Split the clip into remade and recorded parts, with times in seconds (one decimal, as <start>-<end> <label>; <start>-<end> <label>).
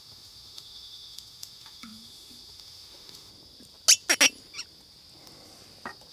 0.0-3.3 remade; 3.3-6.1 recorded